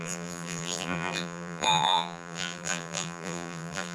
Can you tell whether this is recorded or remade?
remade